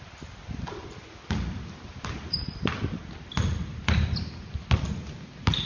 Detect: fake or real real